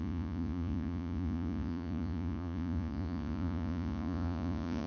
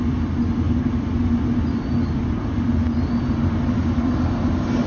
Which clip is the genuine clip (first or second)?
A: second